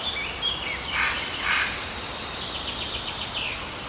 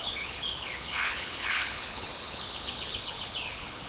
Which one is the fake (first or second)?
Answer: second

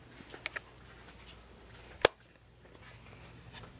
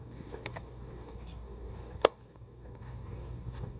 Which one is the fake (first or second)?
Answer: second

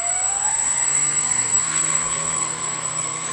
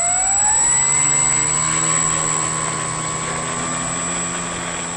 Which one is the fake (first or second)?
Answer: first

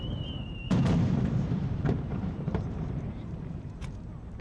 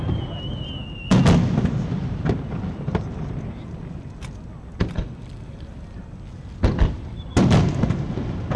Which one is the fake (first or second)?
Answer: first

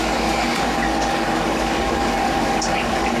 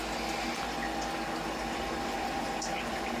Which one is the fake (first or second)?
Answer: first